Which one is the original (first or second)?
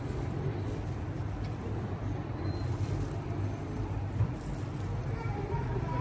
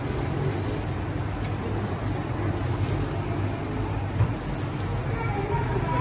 second